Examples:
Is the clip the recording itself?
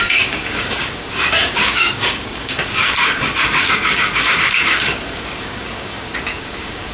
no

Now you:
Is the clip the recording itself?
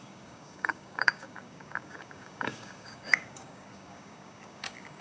no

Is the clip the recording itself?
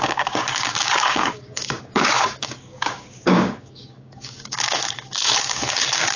no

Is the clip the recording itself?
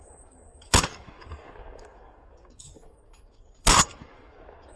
no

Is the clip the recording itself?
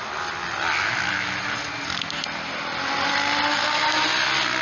yes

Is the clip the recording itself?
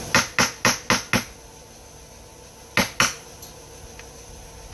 yes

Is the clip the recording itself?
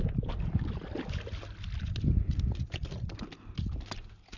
yes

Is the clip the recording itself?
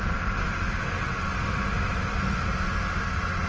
yes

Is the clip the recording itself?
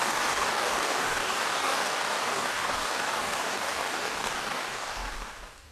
no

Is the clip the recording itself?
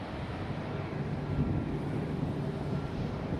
yes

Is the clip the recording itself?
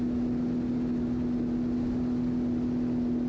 yes